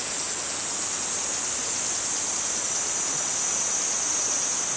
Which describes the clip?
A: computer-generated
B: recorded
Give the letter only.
B